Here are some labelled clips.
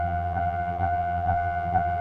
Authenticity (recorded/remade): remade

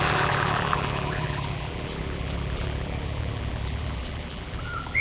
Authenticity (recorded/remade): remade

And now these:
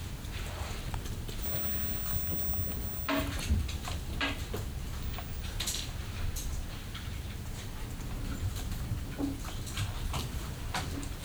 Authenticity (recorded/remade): recorded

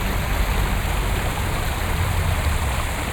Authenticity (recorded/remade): recorded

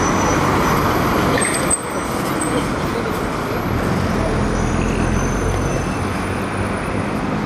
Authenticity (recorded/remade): recorded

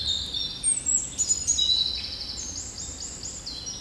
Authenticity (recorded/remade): recorded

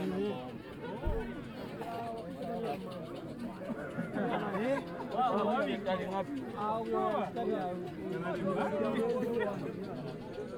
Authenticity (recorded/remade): recorded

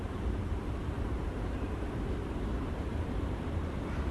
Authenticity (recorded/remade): remade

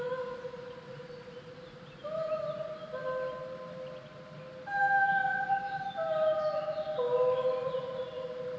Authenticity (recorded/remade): recorded